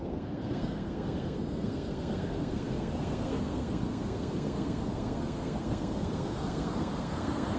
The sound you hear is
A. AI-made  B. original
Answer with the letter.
A